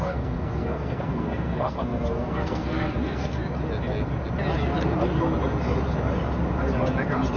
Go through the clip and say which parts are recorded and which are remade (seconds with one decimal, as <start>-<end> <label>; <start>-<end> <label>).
0.0-3.4 remade; 3.4-7.4 recorded